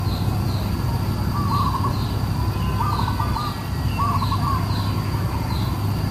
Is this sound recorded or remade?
recorded